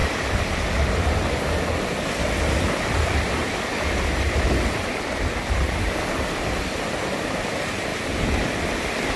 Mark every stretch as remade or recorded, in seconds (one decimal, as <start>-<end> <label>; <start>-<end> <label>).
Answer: 0.0-3.4 remade; 3.4-6.5 recorded; 6.5-7.9 remade; 7.9-8.5 recorded; 8.5-9.2 remade